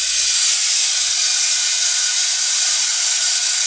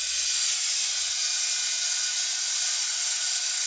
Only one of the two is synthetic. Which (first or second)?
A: first